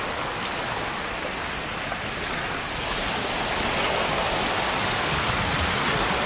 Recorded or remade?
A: recorded